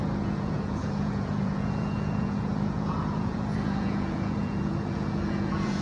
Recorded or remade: remade